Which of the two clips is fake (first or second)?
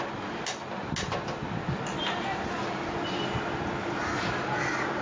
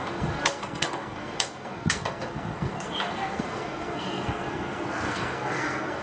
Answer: second